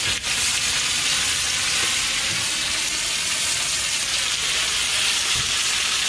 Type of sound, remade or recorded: recorded